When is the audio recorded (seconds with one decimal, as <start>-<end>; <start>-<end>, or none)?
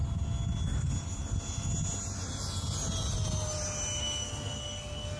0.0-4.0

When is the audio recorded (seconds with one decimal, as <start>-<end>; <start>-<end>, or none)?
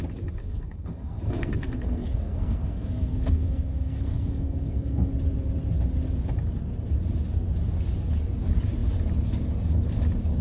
0.0-0.4; 5.1-10.4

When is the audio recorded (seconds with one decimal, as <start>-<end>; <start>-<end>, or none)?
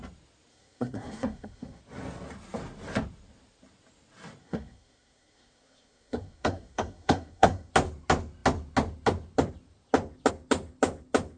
0.0-0.5; 1.8-4.4; 7.7-11.4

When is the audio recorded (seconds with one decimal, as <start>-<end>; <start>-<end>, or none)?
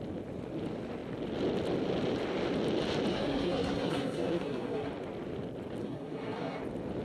0.0-3.1; 4.9-5.8; 6.6-7.0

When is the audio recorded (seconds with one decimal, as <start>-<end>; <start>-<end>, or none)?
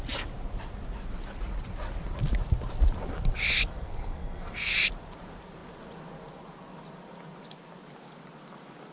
0.0-3.7; 4.7-8.9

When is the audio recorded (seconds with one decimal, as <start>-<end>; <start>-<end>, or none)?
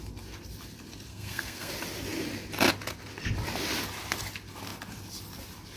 0.0-1.1; 1.7-5.8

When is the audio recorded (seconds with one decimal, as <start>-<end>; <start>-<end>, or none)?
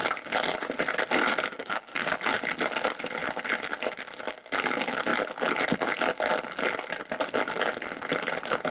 0.0-1.5; 2.1-8.7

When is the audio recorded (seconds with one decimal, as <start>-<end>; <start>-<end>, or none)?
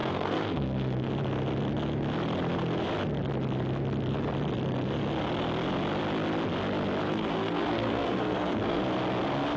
1.1-7.1; 8.8-9.6